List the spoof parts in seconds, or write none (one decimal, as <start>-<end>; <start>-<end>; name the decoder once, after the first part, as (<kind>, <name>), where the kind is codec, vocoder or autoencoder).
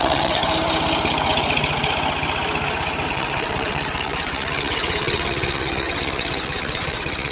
0.0-0.4 (vocoder, WaveNeXt); 3.1-7.3